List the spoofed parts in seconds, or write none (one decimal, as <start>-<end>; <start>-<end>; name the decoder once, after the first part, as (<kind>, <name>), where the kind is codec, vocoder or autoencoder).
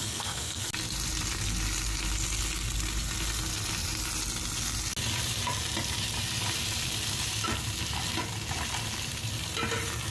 0.0-0.6 (codec, SNAC)